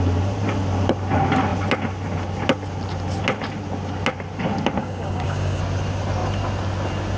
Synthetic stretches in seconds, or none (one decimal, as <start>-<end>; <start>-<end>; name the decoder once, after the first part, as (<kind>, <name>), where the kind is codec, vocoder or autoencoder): 4.8-5.6 (codec, DAC)